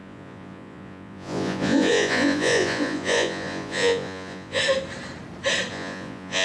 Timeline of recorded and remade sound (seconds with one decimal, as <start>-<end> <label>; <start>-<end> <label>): 0.0-4.6 remade; 4.6-5.7 recorded; 5.7-6.4 remade